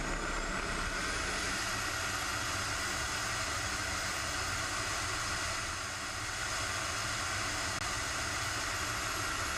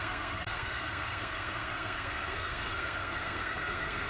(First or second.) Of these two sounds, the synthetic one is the second